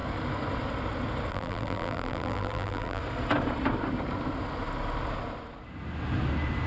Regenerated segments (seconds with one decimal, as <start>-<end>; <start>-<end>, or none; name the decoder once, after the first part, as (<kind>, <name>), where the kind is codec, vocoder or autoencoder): 1.3-3.0 (vocoder, BigVGAN v2)